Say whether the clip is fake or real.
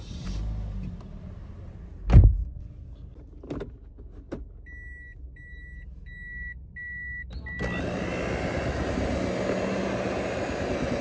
real